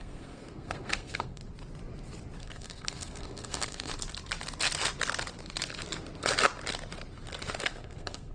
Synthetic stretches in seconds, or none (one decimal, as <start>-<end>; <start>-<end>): 0.0-1.4; 2.4-3.9; 7.6-8.3